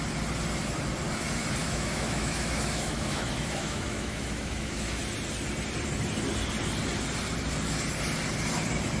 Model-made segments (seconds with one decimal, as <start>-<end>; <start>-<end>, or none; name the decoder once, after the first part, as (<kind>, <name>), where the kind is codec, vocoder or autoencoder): 1.6-5.0 (autoencoder, DAC-VAE)